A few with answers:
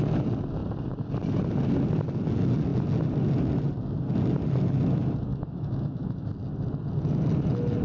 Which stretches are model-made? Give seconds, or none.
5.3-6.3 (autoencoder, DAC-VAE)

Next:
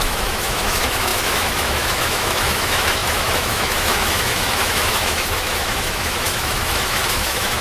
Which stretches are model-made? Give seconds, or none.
0.0-7.6 (autoencoder, DAC-VAE)

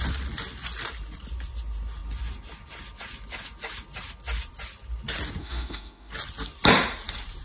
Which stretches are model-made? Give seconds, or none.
5.4-6.1 (autoencoder, DAC-VAE)

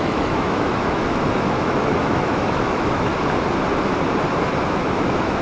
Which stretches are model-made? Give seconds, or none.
0.0-3.1 (autoencoder, DAC-VAE); 4.7-5.4